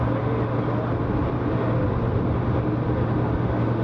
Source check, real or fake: real